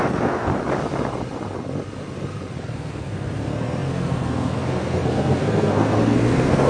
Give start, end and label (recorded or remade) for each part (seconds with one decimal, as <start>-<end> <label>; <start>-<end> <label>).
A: 0.0-0.5 remade; 0.5-2.6 recorded; 2.6-6.7 remade